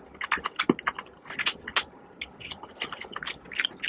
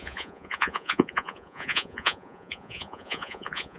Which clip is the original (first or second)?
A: first